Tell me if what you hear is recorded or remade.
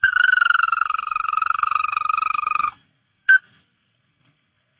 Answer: remade